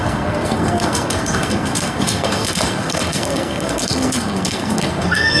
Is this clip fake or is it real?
fake